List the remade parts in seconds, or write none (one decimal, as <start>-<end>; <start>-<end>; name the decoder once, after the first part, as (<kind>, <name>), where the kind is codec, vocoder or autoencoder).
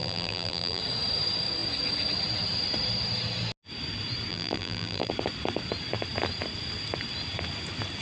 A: 0.0-0.8 (vocoder, BigVGAN v2); 4.3-5.1